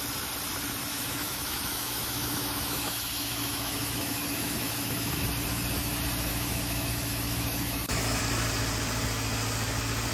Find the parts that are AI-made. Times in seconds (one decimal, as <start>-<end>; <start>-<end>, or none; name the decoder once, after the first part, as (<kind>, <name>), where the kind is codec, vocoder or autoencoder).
0.9-5.3 (autoencoder, DAC-VAE); 6.3-8.2